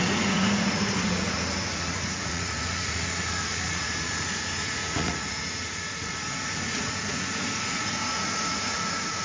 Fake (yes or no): yes